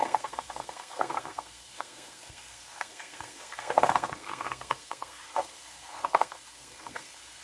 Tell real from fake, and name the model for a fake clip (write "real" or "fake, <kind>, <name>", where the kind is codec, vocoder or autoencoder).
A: fake, codec, SNAC